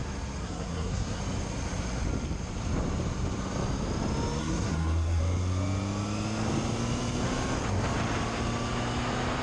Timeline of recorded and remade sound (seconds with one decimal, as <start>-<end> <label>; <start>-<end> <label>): 0.0-0.4 recorded; 0.4-1.2 remade; 1.2-4.4 recorded; 4.4-5.2 remade; 5.2-9.4 recorded